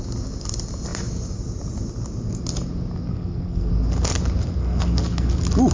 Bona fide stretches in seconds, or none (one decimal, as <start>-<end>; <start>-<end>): 0.0-3.1; 3.7-4.6; 5.3-5.7